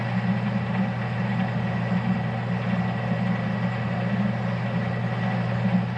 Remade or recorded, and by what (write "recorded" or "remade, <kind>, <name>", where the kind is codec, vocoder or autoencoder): recorded